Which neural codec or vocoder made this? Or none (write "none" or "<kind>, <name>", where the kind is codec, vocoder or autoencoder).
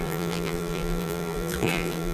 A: vocoder, BigVGAN v2